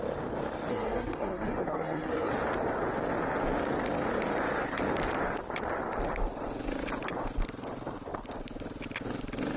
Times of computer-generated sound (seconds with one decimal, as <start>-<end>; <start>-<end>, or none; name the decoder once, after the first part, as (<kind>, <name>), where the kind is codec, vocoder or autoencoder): 0.7-2.3 (codec, SNAC)